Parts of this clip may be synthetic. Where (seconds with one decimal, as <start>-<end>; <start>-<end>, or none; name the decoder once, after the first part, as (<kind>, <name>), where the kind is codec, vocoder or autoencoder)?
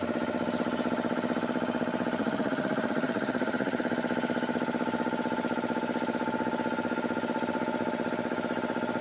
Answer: 2.2-3.8 (vocoder, Vocos)